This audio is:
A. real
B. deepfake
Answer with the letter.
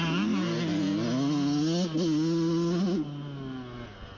A